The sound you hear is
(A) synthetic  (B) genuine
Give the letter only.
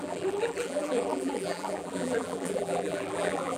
A